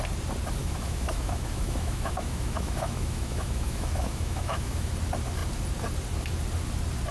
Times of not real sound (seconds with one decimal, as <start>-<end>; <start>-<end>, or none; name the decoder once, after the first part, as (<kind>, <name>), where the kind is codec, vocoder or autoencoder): 0.6-4.9 (autoencoder, DAC-VAE)

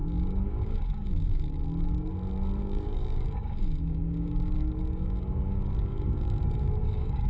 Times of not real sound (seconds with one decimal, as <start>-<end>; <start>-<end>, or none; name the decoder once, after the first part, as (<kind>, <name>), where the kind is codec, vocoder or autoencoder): 0.0-2.1 (codec, DAC); 2.6-7.3

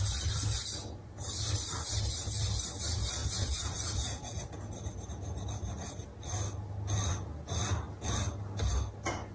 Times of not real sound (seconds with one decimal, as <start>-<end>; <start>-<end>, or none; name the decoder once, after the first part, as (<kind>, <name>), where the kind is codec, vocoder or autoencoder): 3.2-4.4 (vocoder, Vocos)

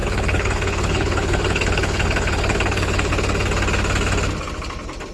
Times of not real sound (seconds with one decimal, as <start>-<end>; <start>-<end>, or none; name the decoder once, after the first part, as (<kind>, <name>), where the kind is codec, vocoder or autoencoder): 0.0-3.1 (codec, HILCodec)

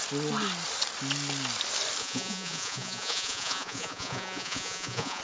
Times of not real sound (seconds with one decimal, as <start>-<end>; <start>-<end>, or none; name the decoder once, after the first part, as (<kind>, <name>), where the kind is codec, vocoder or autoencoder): 2.0-5.2 (vocoder, Vocos)

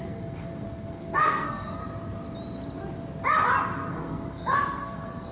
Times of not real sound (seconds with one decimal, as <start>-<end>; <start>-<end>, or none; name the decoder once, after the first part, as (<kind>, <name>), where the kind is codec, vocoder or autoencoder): 0.0-1.8 (codec, SNAC); 3.9-5.3